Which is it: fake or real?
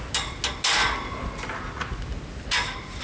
real